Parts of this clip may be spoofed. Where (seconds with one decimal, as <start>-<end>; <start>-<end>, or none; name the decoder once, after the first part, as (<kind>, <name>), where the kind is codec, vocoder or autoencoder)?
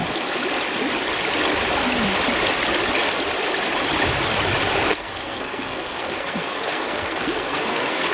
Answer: 4.9-8.1 (codec, SNAC)